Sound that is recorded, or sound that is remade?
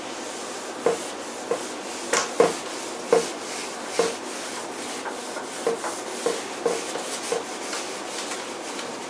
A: recorded